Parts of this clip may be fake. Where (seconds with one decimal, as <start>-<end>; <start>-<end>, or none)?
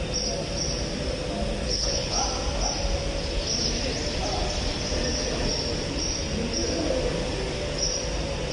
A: 1.6-2.2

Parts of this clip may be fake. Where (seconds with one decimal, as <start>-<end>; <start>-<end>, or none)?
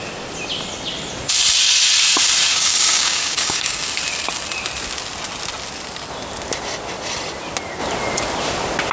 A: 2.5-3.9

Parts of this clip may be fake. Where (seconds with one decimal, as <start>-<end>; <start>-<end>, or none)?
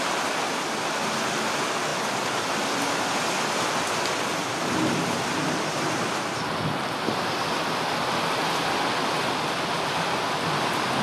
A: none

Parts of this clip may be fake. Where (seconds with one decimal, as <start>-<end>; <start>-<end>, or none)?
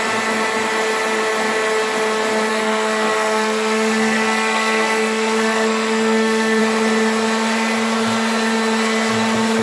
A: 2.5-6.6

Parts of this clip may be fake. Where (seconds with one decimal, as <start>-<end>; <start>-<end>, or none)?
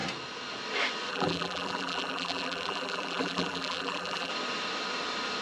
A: 1.1-4.3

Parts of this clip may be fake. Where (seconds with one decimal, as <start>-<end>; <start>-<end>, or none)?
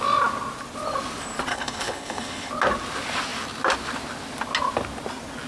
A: 1.5-2.5